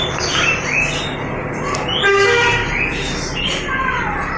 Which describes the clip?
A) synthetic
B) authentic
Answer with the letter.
B